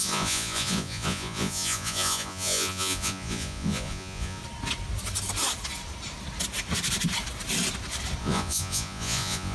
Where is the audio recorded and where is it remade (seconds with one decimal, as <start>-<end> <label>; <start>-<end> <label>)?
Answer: 0.0-4.4 remade; 4.4-8.2 recorded; 8.2-9.5 remade